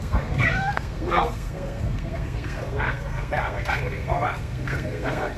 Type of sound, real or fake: fake